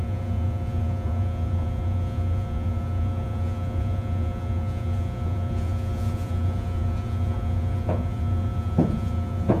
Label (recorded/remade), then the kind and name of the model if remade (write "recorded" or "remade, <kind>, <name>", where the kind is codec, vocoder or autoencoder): remade, vocoder, Vocos